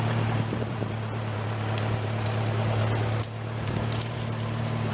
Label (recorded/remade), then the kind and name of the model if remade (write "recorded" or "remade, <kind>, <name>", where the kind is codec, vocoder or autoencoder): remade, vocoder, BigVGAN v2